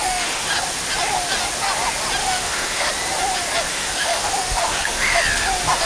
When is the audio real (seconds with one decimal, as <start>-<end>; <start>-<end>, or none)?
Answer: 0.5-2.2; 2.9-3.7; 5.2-5.9